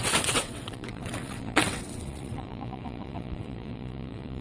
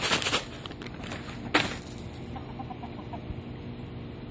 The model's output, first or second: first